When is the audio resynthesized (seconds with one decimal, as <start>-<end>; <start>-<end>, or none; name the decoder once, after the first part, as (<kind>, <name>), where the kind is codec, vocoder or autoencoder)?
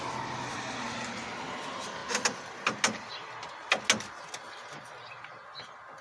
none